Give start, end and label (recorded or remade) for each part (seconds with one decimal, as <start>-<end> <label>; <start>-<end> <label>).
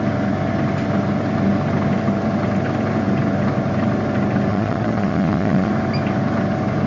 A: 0.0-4.5 recorded; 4.5-5.7 remade; 5.7-6.9 recorded